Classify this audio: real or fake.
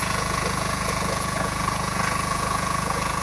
fake